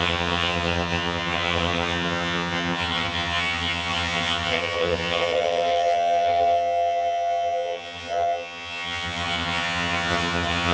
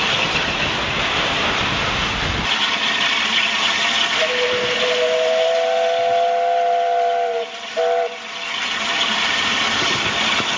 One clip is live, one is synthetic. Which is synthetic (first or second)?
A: first